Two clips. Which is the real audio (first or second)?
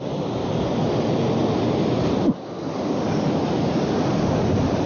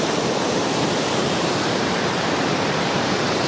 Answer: first